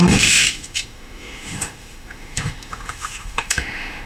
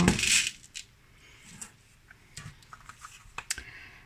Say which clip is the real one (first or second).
second